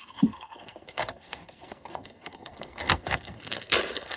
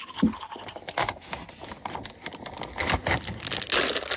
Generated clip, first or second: first